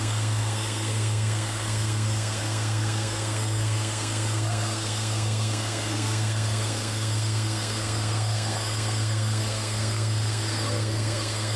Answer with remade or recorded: remade